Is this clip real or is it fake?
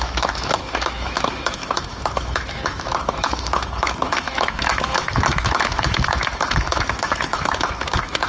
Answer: fake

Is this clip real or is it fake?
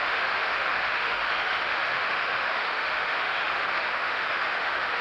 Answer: fake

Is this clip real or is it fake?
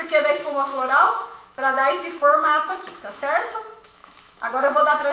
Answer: fake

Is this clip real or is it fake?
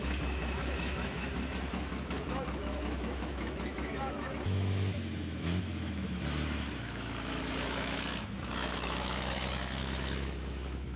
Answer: fake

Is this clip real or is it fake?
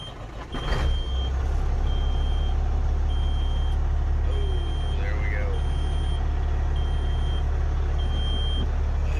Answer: real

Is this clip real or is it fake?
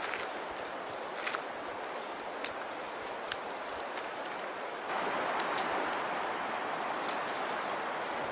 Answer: real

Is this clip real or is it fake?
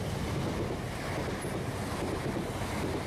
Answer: real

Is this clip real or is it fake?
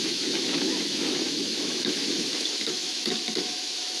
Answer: fake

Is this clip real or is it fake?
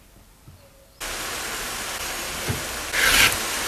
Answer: real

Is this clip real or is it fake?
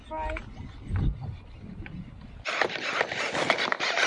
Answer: real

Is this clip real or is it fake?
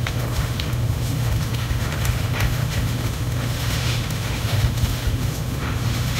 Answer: fake